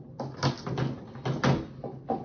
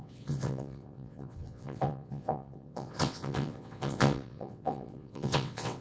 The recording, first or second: first